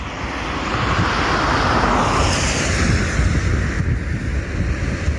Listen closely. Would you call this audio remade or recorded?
recorded